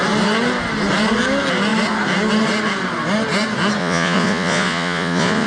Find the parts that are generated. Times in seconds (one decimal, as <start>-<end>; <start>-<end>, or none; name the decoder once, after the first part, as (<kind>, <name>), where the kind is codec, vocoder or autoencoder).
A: 3.8-5.5 (vocoder, Vocos)